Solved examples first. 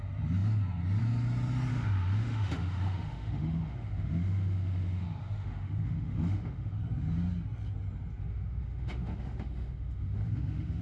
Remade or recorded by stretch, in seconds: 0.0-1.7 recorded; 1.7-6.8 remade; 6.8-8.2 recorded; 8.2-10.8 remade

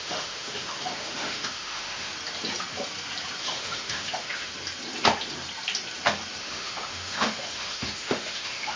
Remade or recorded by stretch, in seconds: 0.0-2.1 remade; 2.1-3.4 recorded; 3.4-4.5 remade; 4.5-6.4 recorded; 6.4-8.8 remade

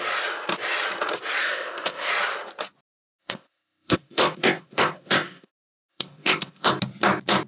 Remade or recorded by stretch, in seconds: 0.0-1.4 recorded; 1.4-2.1 remade; 2.1-3.2 recorded; 3.2-5.5 remade; 5.5-5.9 recorded; 5.9-6.7 remade; 6.7-7.5 recorded

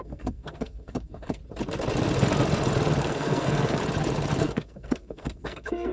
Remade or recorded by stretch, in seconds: 0.0-1.4 remade; 1.4-3.0 recorded; 3.0-3.8 remade; 3.8-4.4 recorded; 4.4-5.9 remade

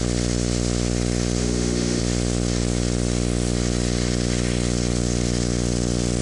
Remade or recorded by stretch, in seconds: 0.0-1.4 recorded; 1.4-2.0 remade; 2.0-6.2 recorded